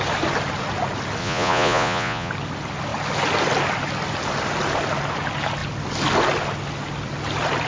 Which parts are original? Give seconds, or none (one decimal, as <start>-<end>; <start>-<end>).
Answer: 0.0-1.2; 2.3-7.7